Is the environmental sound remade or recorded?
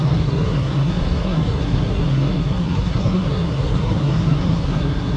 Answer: remade